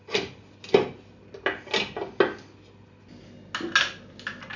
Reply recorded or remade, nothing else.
recorded